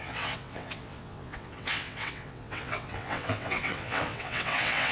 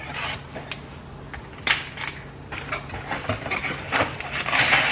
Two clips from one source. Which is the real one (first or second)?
second